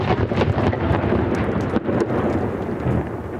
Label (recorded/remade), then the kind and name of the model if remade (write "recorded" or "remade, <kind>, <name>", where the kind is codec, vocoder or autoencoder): recorded